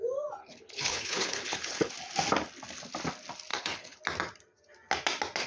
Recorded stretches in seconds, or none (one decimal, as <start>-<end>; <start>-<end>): 0.0-0.4; 1.9-3.5; 4.0-5.5